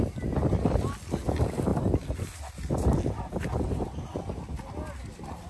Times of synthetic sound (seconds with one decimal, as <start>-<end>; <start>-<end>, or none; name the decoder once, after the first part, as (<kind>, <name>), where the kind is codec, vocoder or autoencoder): none